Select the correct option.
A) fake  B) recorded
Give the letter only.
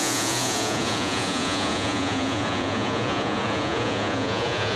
A